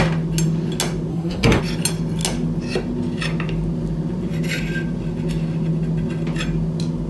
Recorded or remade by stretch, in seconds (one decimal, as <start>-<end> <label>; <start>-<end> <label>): 0.0-1.1 recorded; 1.1-1.6 remade; 1.6-7.1 recorded